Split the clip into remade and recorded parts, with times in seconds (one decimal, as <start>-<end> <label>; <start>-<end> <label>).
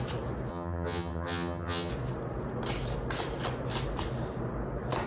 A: 0.0-0.5 recorded; 0.5-1.9 remade; 1.9-5.1 recorded